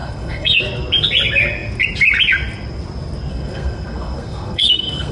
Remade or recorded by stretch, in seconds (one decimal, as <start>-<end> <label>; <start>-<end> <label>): 0.0-0.6 remade; 0.6-3.3 recorded; 3.3-5.1 remade